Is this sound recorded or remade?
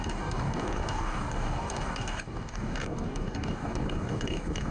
remade